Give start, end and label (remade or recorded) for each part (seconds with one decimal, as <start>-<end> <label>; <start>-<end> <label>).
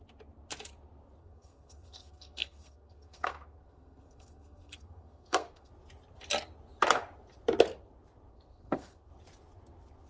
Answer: 0.0-1.2 recorded; 1.2-5.7 remade; 5.7-8.3 recorded; 8.3-9.1 remade; 9.1-10.1 recorded